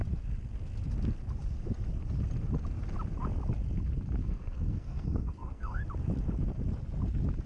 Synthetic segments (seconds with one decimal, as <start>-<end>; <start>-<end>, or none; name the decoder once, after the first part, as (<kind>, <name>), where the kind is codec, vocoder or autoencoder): 4.2-5.8 (codec, SNAC)